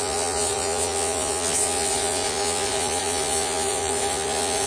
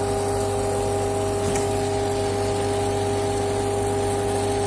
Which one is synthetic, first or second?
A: first